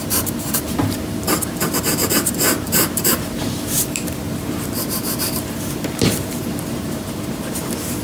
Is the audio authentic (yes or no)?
no